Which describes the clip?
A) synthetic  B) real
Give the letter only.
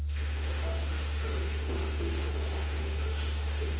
A